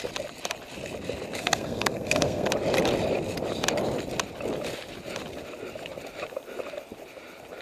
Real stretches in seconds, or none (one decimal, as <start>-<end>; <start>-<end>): 0.0-1.4; 2.5-7.6